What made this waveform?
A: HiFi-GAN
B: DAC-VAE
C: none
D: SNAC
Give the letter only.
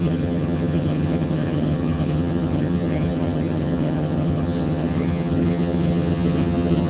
A